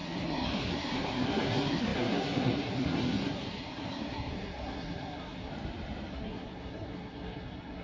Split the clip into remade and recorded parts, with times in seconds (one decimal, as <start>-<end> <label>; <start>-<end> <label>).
0.0-5.5 remade; 5.5-6.1 recorded; 6.1-7.8 remade